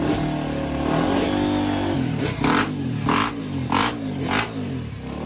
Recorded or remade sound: recorded